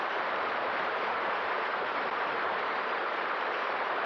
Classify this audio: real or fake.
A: fake